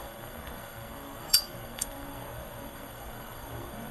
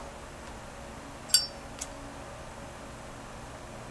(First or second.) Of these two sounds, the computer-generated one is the first